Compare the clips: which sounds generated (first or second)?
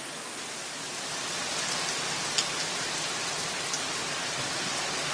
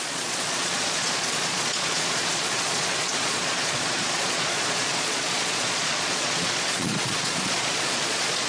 second